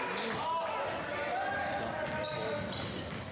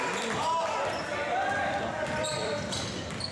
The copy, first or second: second